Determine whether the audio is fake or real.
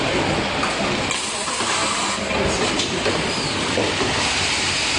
real